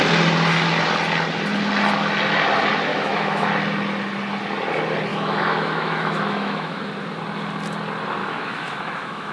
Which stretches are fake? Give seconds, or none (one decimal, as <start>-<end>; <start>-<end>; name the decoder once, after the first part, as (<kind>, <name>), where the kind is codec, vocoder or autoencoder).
2.9-3.5 (autoencoder, DAC-VAE); 5.1-6.8; 8.2-9.3